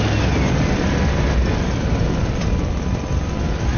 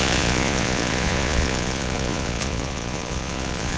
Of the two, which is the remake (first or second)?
second